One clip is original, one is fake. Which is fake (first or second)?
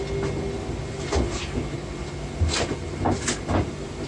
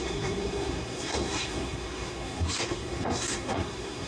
second